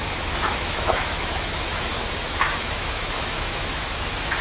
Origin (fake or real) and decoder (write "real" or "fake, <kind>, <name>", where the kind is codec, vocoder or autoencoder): fake, autoencoder, DAC-VAE